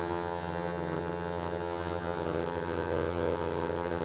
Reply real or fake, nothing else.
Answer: fake